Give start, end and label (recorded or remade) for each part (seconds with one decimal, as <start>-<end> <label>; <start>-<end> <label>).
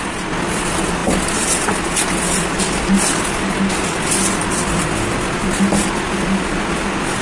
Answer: 0.0-7.2 recorded